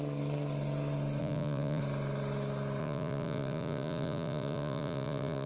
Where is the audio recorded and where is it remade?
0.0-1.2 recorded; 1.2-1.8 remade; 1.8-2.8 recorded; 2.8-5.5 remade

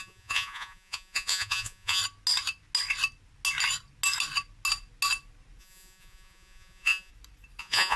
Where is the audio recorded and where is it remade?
0.0-2.0 remade; 2.0-5.6 recorded; 5.6-7.1 remade; 7.1-7.6 recorded; 7.6-8.0 remade

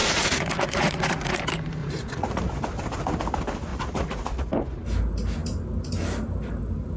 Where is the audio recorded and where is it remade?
0.0-1.4 remade; 1.4-1.8 recorded; 1.8-2.4 remade; 2.4-3.7 recorded; 3.7-4.5 remade; 4.5-7.0 recorded